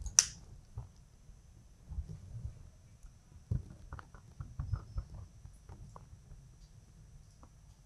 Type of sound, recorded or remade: recorded